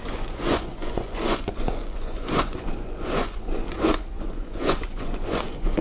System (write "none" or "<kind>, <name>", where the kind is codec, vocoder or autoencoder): vocoder, Vocos